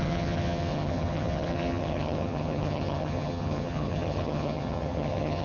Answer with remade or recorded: remade